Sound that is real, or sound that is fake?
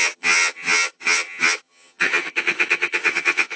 fake